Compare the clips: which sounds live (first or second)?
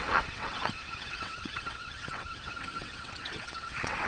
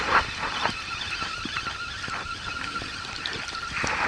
second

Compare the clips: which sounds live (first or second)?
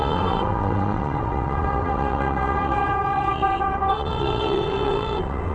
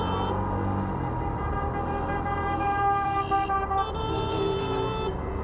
second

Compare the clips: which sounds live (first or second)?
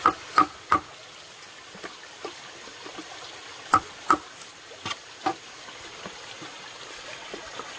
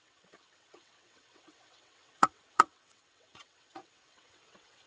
first